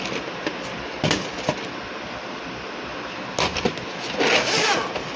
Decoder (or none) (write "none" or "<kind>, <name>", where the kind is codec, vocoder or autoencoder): none